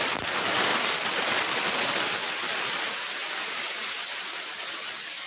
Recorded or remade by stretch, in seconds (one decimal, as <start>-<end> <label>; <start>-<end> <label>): 0.0-0.7 recorded; 0.7-3.9 remade; 3.9-5.3 recorded